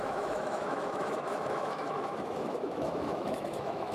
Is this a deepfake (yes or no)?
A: yes